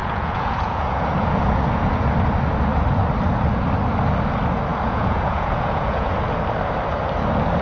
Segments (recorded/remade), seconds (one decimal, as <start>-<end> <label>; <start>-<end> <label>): 0.0-2.1 remade; 2.1-4.7 recorded; 4.7-6.2 remade; 6.2-7.6 recorded